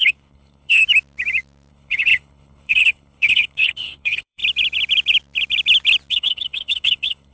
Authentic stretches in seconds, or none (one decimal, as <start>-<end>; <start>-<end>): 0.8-1.7; 4.4-6.1